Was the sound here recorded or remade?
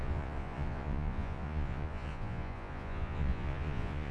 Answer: remade